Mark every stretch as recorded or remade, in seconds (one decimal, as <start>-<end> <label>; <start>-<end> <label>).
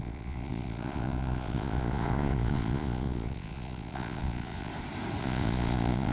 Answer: 0.0-4.7 remade; 4.7-5.2 recorded; 5.2-6.1 remade